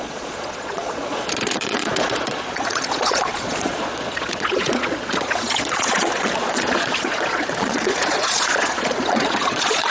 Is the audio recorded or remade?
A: remade